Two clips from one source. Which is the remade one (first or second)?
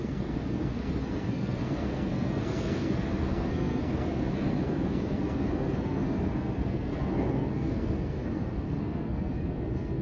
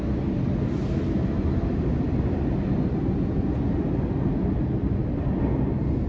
first